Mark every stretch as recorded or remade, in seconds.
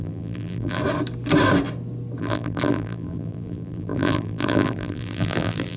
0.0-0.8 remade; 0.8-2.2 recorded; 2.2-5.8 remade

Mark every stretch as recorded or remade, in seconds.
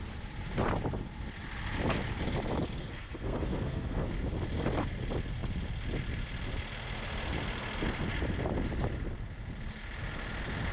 0.0-2.8 recorded; 2.8-4.1 remade; 4.1-10.7 recorded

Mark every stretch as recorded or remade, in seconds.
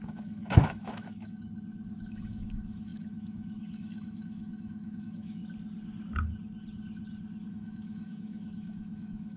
0.0-1.5 remade; 1.5-2.1 recorded; 2.1-5.4 remade; 5.4-7.5 recorded; 7.5-9.4 remade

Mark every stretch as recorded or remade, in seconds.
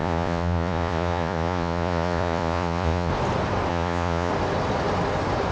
0.0-3.1 remade; 3.1-3.7 recorded; 3.7-4.3 remade; 4.3-5.5 recorded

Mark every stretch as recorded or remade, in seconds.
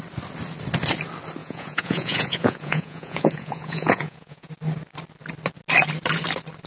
0.0-1.4 recorded; 1.4-4.5 remade; 4.5-6.7 recorded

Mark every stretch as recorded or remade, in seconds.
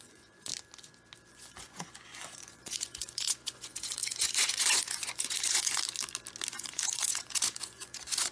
0.0-0.5 remade; 0.5-1.3 recorded; 1.3-5.8 remade; 5.8-6.5 recorded; 6.5-8.3 remade